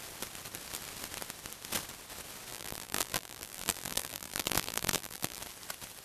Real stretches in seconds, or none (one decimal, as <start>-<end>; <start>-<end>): 0.0-2.5; 5.4-6.0